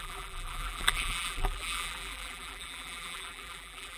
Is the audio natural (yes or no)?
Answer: no